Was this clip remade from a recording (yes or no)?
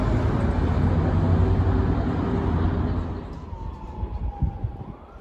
no